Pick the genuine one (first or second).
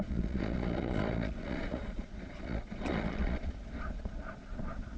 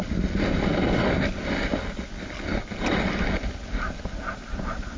second